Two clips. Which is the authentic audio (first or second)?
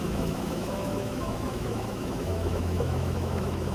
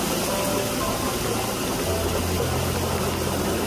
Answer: second